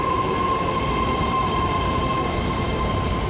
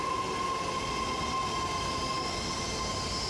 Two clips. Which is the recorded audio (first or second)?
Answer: second